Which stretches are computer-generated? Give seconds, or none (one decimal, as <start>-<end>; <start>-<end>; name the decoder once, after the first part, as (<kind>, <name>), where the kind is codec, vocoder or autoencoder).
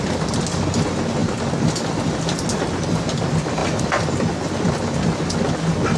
none